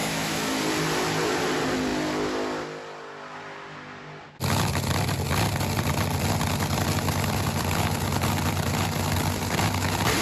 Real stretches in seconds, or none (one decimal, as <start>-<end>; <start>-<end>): 0.6-10.2